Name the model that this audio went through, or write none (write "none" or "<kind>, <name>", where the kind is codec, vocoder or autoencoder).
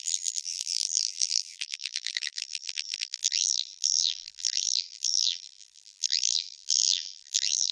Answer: vocoder, BigVGAN v2